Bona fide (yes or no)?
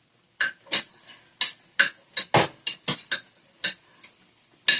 yes